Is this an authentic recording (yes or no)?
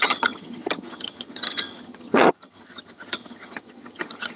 no